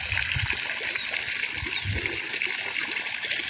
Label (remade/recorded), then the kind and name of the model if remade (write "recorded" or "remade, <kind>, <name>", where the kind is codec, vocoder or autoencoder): recorded